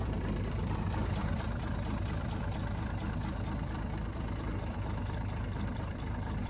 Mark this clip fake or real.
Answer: fake